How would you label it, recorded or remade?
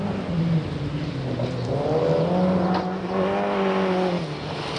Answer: recorded